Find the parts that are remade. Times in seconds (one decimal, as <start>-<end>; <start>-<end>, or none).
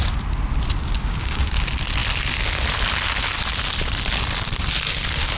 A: 0.8-1.5